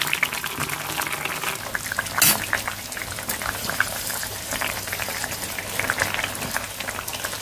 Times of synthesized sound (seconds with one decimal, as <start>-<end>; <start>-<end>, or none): 3.6-5.6